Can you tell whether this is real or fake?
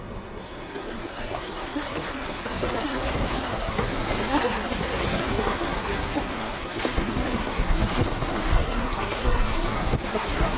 fake